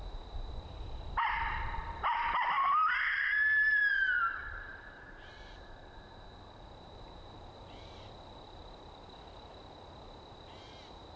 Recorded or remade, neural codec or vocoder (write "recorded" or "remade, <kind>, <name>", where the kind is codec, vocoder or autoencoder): remade, vocoder, BigVGAN v2